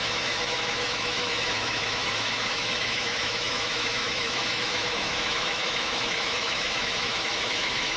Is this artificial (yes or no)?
yes